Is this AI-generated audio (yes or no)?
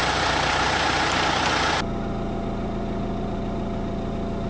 no